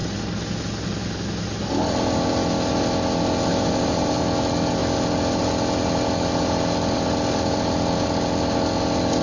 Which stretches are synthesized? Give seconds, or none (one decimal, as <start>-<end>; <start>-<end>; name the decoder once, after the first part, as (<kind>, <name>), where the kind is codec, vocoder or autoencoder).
3.5-4.2 (vocoder, BigVGAN v2)